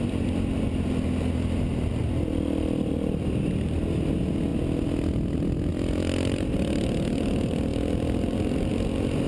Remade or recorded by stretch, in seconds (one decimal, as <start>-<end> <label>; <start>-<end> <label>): 0.0-9.3 recorded